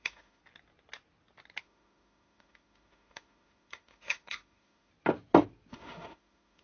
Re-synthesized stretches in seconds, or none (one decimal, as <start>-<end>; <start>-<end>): 0.0-0.4; 1.6-4.9; 5.7-6.6